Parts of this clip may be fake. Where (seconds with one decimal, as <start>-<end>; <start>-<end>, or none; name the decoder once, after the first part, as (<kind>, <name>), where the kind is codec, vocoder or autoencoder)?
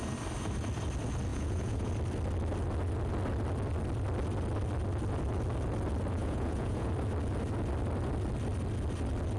1.3-1.9 (vocoder, Vocos); 6.2-6.9